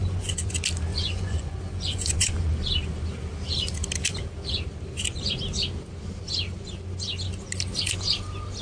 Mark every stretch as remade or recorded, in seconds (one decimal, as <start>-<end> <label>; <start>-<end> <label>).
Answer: 0.0-0.5 remade; 0.5-0.9 recorded; 0.9-2.5 remade; 2.5-8.6 recorded